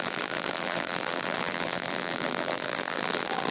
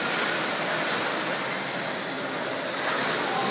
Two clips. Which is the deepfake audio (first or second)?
first